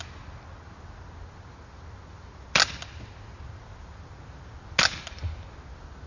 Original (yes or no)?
yes